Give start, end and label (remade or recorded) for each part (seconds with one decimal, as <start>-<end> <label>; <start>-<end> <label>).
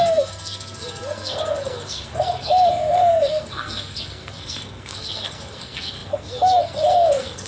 0.0-7.5 remade